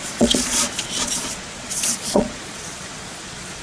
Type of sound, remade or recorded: remade